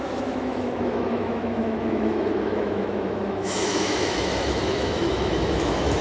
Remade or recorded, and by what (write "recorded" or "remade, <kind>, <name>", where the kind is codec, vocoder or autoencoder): remade, autoencoder, DAC-VAE